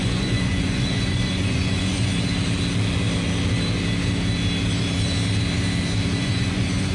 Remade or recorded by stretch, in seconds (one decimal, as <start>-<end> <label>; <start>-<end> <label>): 0.0-2.1 remade; 2.1-6.2 recorded; 6.2-6.9 remade